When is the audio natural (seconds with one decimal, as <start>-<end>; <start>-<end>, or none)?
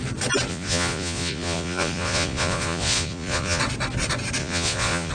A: 0.0-0.5; 3.6-4.4